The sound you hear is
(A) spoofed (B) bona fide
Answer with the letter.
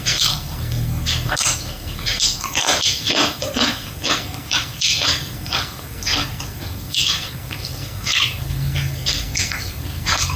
A